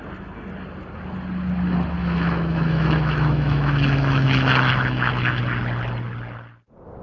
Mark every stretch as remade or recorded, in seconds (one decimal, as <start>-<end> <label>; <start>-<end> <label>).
0.0-2.0 recorded; 2.0-5.4 remade; 5.4-7.0 recorded